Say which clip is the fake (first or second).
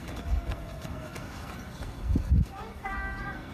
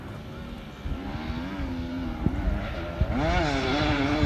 first